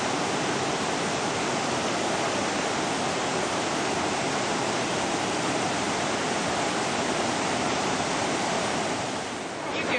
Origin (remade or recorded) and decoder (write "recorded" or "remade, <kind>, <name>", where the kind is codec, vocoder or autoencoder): recorded